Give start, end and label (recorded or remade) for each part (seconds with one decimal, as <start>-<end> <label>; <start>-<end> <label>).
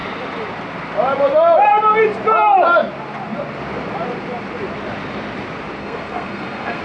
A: 0.0-5.8 recorded; 5.8-6.8 remade